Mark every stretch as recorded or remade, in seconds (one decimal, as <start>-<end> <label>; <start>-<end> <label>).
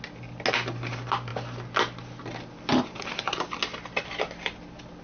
0.0-5.0 recorded